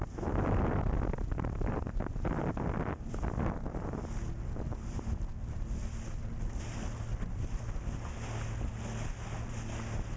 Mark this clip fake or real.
real